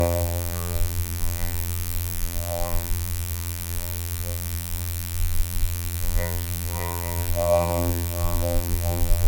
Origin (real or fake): fake